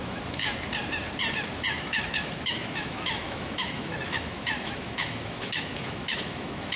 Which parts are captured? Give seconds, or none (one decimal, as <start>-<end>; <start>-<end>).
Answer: 0.4-1.7